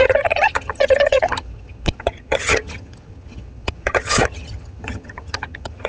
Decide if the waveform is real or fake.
fake